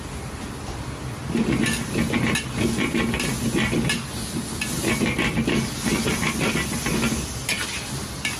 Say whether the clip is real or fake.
real